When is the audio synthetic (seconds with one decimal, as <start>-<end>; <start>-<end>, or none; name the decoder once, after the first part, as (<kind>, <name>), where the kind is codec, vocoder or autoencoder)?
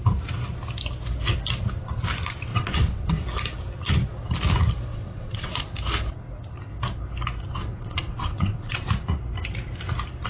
2.5-3.1 (vocoder, WaveNeXt); 4.9-5.6; 7.6-8.9